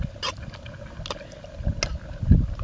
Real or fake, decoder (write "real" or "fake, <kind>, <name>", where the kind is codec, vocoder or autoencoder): real